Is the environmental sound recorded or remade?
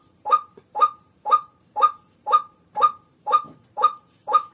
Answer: remade